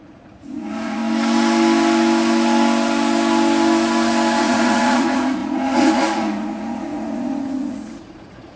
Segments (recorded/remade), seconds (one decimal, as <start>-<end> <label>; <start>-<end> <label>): 0.0-1.0 remade; 1.0-4.4 recorded; 4.4-8.6 remade